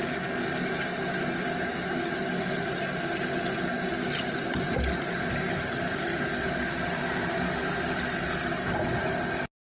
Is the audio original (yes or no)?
yes